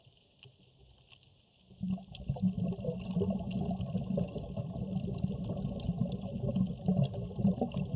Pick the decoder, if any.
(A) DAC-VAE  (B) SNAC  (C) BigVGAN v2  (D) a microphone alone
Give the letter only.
D